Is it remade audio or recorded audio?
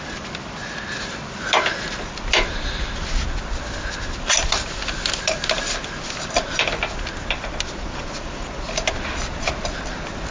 recorded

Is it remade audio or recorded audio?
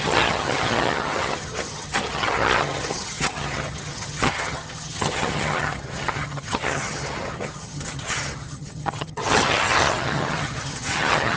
remade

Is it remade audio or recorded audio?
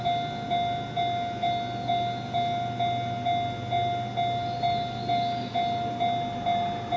recorded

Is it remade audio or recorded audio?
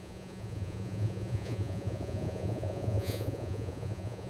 remade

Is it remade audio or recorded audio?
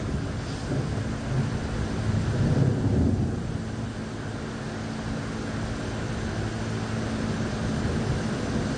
recorded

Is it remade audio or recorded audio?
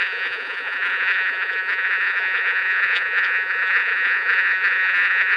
remade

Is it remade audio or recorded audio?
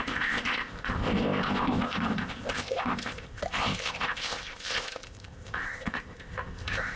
remade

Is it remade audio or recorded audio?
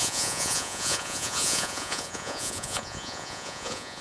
remade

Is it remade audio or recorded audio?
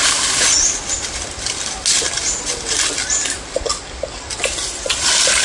recorded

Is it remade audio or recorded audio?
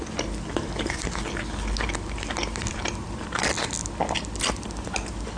recorded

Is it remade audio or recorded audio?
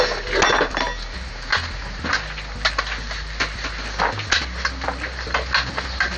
recorded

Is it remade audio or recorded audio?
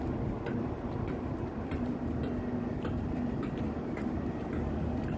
recorded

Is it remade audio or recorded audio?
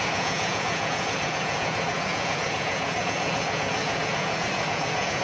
remade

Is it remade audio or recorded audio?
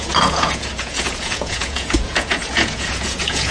remade